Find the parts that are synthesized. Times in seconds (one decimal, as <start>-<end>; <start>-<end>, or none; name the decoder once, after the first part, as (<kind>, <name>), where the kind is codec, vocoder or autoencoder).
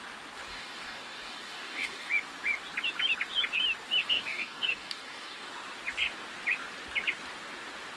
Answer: 0.5-2.1 (codec, DAC); 4.0-5.5